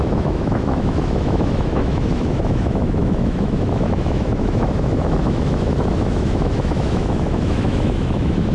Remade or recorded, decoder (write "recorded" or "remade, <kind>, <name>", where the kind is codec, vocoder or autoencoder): remade, autoencoder, DAC-VAE